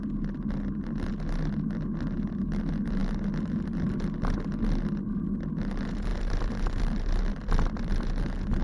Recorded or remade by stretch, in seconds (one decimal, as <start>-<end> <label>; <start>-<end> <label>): 0.0-6.1 recorded; 6.1-8.2 remade; 8.2-8.6 recorded